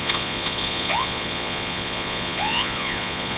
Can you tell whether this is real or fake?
fake